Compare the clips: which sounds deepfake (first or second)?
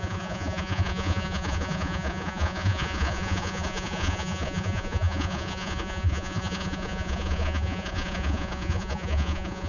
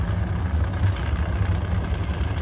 first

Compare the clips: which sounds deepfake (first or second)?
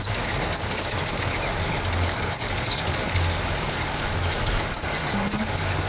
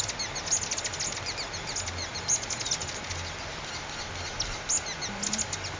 first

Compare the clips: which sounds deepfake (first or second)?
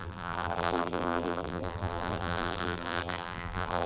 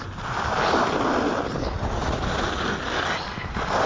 first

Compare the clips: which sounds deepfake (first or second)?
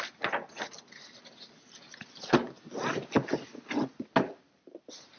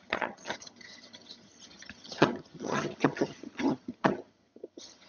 second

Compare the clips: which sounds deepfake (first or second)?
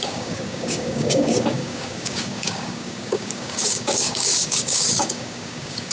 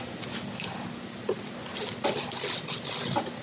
first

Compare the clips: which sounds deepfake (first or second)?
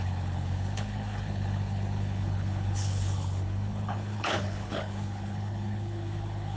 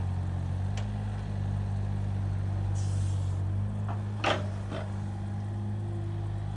first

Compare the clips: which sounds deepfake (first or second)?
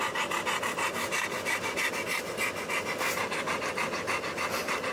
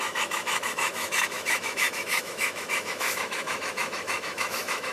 second